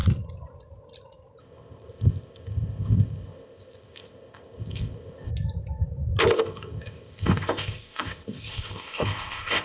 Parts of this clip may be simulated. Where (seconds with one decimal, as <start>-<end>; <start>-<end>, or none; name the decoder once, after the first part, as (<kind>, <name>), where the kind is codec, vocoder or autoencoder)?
1.4-5.3 (codec, ZipCodec); 6.3-9.6

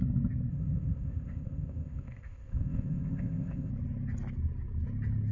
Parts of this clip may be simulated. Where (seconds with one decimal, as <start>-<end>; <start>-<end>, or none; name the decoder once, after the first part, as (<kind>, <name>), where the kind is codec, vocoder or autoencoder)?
0.5-3.7 (codec, ZipCodec)

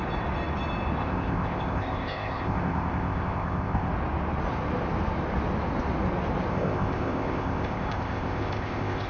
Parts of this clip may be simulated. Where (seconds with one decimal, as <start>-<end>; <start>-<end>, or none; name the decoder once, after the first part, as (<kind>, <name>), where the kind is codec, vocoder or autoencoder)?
1.0-3.9 (codec, ZipCodec); 6.5-9.1

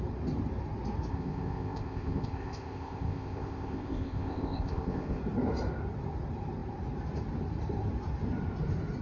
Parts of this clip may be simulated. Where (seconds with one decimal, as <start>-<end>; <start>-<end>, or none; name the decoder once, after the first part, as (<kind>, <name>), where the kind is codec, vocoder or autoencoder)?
1.1-5.2 (codec, ZipCodec)

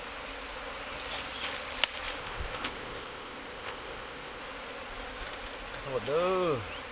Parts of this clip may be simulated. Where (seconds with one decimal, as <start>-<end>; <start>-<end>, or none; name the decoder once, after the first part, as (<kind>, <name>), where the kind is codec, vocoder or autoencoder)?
2.2-4.4 (codec, ZipCodec)